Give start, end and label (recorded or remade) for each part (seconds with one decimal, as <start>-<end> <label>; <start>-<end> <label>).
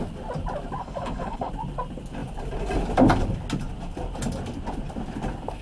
0.0-0.8 recorded; 0.8-1.5 remade; 1.5-5.6 recorded